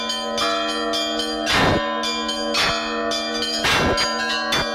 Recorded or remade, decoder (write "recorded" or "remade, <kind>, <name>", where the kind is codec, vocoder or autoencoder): recorded